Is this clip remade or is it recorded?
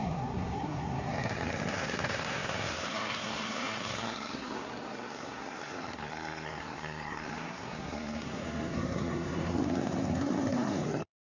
remade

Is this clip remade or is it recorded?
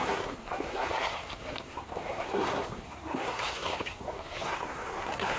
remade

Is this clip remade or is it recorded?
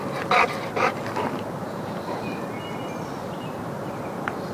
recorded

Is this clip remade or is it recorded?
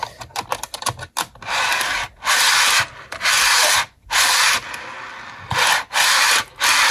recorded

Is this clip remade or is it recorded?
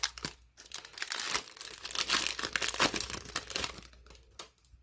recorded